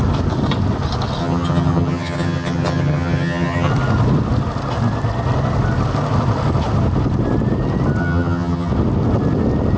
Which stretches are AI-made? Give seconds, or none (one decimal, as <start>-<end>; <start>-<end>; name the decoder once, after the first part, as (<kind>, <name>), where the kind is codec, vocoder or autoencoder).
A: 1.2-3.7 (vocoder, HiFi-GAN); 8.0-8.7